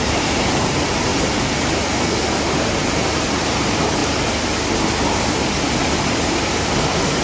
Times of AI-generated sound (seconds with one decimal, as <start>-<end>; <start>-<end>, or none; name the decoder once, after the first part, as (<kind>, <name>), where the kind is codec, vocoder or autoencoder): 0.0-1.1 (vocoder, BigVGAN v2); 3.3-4.0; 6.0-7.2